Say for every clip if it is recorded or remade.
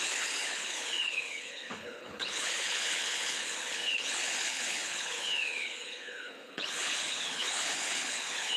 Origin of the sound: remade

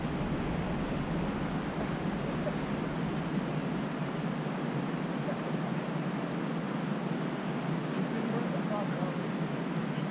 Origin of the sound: recorded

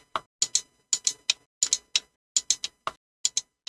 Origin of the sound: recorded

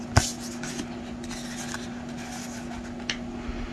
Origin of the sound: recorded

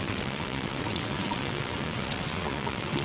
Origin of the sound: remade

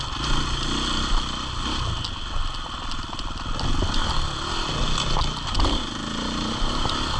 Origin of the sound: recorded